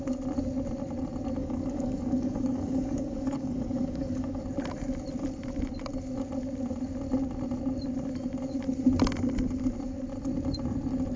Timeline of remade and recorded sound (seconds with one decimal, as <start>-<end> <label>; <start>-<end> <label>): 0.0-1.4 recorded; 1.4-4.4 remade; 4.4-11.2 recorded